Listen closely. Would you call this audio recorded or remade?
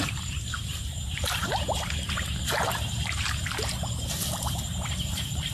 remade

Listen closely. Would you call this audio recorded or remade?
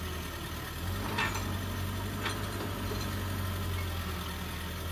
recorded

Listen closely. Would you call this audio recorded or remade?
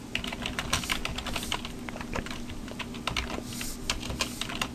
recorded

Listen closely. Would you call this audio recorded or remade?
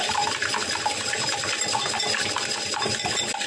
recorded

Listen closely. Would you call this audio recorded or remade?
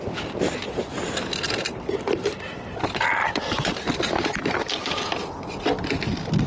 recorded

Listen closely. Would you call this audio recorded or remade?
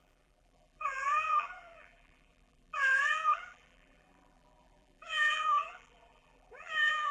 remade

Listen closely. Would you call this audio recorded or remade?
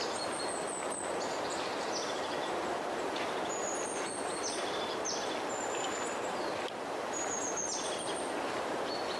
remade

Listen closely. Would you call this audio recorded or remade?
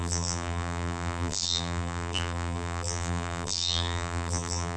remade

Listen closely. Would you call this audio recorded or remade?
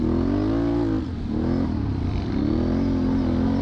remade